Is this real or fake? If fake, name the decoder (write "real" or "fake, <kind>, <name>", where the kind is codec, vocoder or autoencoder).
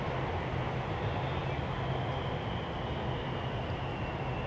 real